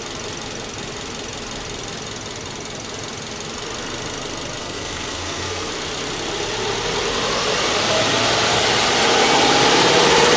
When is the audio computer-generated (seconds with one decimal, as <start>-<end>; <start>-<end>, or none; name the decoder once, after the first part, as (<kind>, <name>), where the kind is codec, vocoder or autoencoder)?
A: 4.6-5.7 (codec, SNAC)